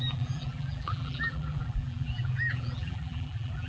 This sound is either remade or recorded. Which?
remade